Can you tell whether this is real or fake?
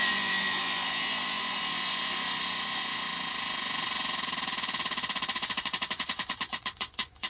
fake